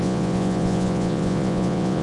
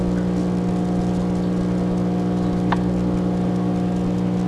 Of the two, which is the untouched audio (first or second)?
second